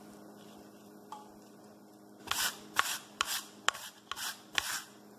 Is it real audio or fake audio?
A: real